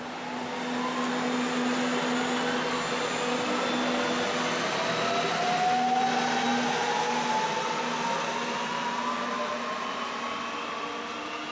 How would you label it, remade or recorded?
recorded